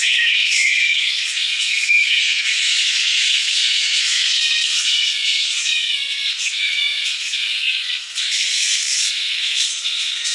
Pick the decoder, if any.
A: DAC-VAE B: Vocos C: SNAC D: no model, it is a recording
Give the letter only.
C